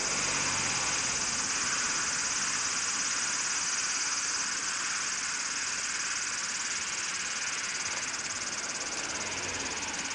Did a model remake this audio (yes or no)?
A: no